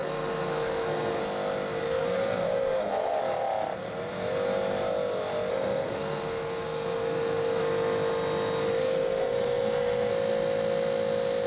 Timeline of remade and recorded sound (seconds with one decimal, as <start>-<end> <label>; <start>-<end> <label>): 0.0-1.2 remade; 1.2-1.8 recorded; 1.8-3.2 remade; 3.2-5.5 recorded; 5.5-7.6 remade; 7.6-8.8 recorded; 8.8-10.1 remade; 10.1-11.5 recorded